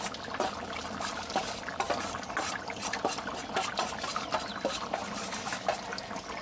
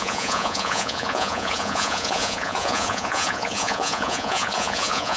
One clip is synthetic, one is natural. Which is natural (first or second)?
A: first